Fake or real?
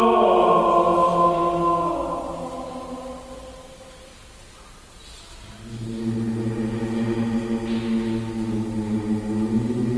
real